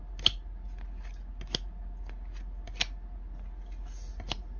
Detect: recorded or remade recorded